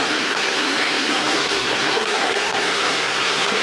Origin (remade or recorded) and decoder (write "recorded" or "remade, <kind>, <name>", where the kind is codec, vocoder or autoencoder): remade, codec, SNAC